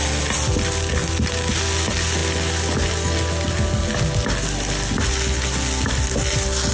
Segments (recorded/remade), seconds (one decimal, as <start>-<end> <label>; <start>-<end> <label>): 0.0-6.7 recorded